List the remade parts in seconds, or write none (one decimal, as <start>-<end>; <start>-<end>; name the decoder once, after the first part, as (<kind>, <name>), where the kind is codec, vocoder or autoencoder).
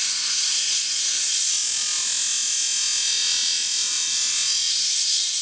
0.0-1.5 (codec, SNAC); 4.7-5.4